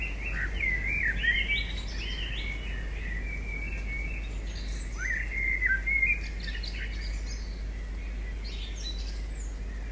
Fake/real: real